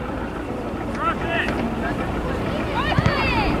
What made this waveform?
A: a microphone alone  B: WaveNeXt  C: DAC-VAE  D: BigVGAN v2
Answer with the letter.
D